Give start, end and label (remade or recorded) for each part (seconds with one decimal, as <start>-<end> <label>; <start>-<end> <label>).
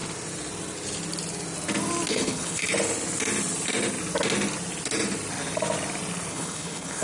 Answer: 0.0-2.1 recorded; 2.1-2.6 remade; 2.6-6.3 recorded; 6.3-7.0 remade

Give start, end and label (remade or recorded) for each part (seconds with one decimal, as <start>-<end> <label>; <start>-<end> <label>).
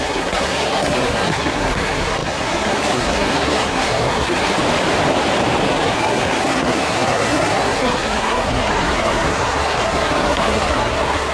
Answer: 0.0-4.6 remade; 4.6-5.7 recorded; 5.7-11.3 remade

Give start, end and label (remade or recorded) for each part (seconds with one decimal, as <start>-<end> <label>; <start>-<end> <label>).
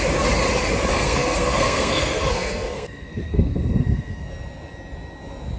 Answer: 0.0-0.9 recorded; 0.9-4.3 remade; 4.3-5.6 recorded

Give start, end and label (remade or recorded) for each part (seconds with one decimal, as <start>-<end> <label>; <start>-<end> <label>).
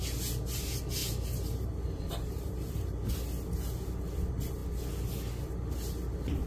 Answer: 0.0-1.0 recorded; 1.0-3.2 remade; 3.2-6.5 recorded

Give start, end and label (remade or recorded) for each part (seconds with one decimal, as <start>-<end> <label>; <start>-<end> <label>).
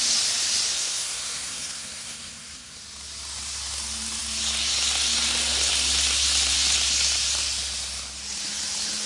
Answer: 0.0-0.7 recorded; 0.7-2.8 remade; 2.8-9.1 recorded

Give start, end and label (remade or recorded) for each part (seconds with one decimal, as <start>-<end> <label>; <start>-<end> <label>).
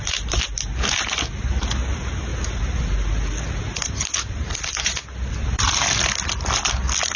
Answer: 0.0-7.2 recorded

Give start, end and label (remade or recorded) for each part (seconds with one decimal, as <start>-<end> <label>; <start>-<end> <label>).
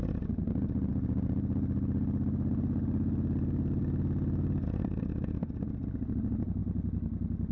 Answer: 0.0-7.5 recorded